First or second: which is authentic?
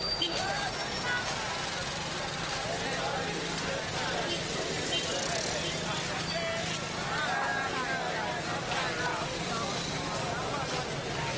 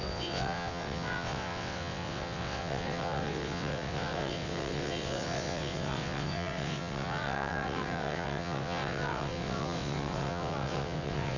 first